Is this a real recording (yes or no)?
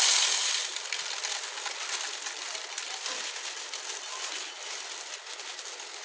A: yes